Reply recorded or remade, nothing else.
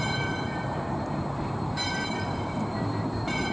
remade